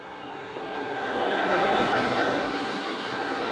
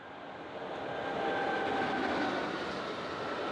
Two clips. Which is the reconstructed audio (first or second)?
first